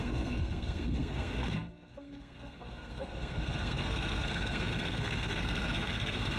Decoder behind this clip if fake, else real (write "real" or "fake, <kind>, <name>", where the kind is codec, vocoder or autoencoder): fake, codec, SNAC